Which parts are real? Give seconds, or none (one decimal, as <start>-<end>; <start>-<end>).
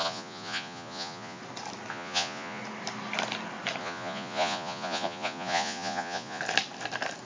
1.4-1.9; 2.6-3.8; 6.4-7.3